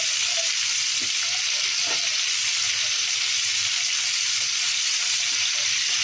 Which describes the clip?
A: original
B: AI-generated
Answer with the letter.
B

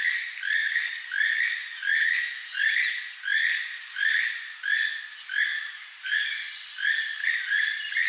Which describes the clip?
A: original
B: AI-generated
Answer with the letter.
A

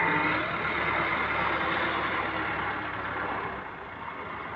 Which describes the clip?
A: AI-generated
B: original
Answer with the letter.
B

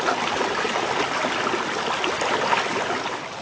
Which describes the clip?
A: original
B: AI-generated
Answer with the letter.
A